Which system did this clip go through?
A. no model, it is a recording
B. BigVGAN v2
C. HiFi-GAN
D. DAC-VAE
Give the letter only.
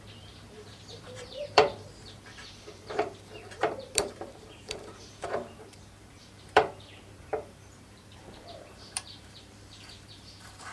B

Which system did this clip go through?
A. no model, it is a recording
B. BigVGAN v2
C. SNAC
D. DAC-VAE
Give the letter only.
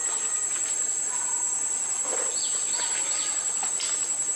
A